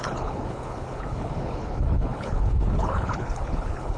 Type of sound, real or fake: fake